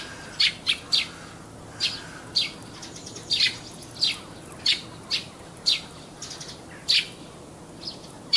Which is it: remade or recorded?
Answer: recorded